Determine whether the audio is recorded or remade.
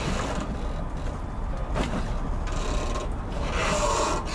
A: recorded